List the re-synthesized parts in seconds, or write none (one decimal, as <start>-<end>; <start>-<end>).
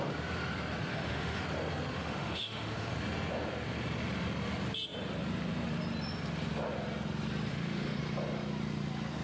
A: 0.9-1.4; 2.0-2.9; 7.5-8.0